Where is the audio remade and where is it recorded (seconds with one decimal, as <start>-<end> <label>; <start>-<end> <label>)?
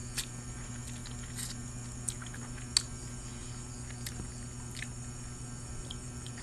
0.0-0.7 remade; 0.7-3.4 recorded; 3.4-6.4 remade